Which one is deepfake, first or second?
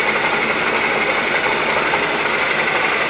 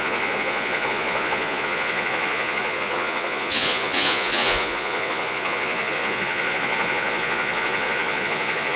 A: second